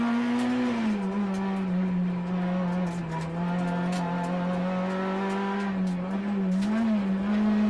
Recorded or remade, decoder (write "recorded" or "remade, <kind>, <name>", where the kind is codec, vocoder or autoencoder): recorded